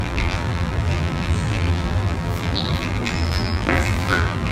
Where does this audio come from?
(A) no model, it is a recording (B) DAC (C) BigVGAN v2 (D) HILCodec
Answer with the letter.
C